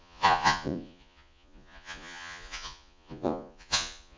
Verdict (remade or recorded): remade